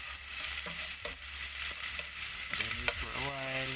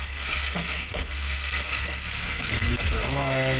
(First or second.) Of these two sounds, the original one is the first